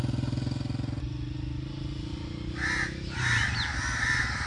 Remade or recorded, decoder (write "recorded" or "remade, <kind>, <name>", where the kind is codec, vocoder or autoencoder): recorded